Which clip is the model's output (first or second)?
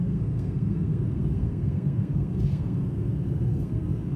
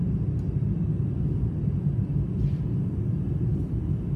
first